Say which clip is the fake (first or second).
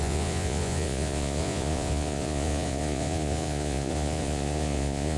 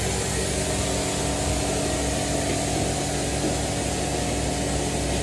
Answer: first